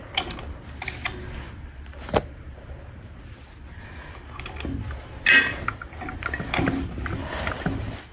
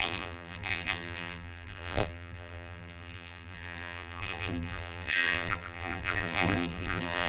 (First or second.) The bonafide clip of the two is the first